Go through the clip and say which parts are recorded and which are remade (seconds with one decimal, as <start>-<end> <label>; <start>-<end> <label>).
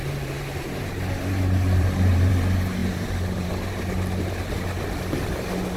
0.0-2.3 remade; 2.3-2.8 recorded; 2.8-3.5 remade; 3.5-5.8 recorded